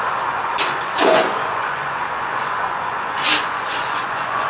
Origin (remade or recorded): remade